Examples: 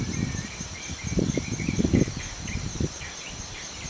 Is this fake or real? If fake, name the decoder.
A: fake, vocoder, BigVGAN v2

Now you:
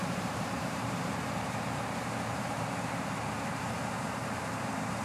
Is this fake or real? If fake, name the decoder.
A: fake, vocoder, BigVGAN v2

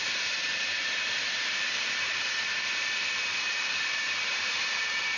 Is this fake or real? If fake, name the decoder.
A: fake, vocoder, BigVGAN v2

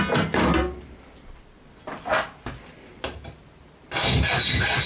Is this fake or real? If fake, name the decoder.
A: real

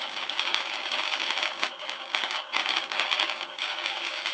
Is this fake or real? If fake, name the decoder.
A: fake, codec, DAC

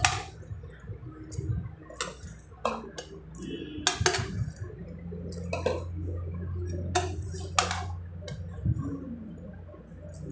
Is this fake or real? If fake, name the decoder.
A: real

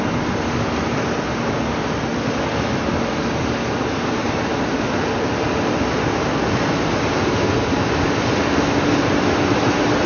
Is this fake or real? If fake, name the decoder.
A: real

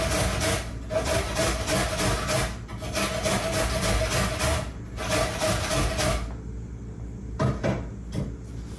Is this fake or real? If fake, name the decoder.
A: real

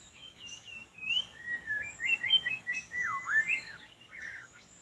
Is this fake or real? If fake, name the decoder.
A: fake, codec, DAC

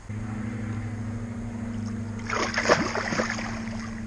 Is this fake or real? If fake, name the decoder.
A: real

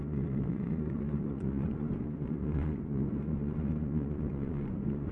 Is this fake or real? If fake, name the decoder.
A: fake, vocoder, Vocos